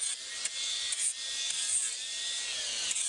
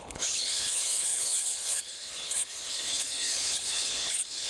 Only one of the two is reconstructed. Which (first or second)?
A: second